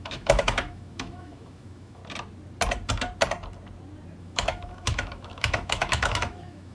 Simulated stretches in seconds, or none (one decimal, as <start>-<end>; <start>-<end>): 0.0-2.0; 4.2-6.7